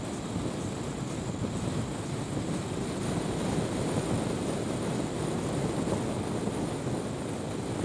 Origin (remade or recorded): recorded